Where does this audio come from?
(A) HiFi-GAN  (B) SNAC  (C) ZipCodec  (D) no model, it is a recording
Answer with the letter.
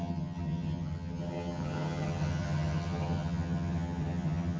A